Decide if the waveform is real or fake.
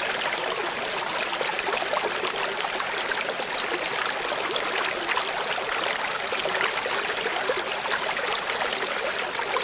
real